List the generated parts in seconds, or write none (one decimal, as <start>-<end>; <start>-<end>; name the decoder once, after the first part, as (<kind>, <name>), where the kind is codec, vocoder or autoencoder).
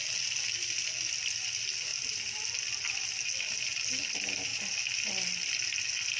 none